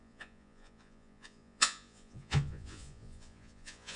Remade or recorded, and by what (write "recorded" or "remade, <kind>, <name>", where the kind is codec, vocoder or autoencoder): remade, vocoder, Vocos